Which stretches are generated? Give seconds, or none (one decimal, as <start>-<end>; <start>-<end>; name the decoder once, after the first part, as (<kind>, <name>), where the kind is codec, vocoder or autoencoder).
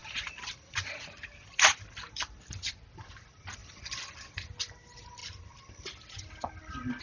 0.0-2.8 (vocoder, BigVGAN v2); 3.6-4.6